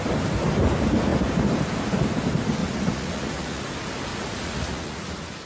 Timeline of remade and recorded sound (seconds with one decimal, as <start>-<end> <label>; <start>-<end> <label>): 0.0-2.6 recorded; 2.6-3.6 remade; 3.6-4.1 recorded; 4.1-5.1 remade; 5.1-5.5 recorded